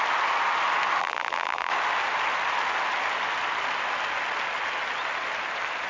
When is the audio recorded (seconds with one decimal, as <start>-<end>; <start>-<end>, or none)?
0.0-1.0; 1.7-5.9